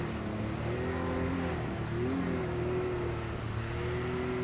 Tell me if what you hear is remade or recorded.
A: recorded